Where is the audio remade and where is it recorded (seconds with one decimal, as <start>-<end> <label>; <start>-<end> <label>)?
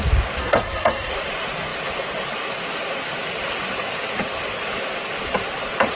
0.0-0.4 recorded; 0.4-1.1 remade; 1.1-5.9 recorded